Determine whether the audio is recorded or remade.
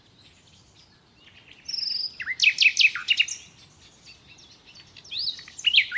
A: recorded